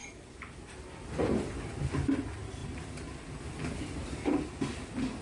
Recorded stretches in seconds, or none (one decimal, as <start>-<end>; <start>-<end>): 1.9-5.2